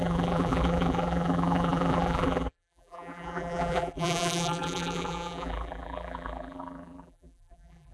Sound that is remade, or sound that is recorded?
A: remade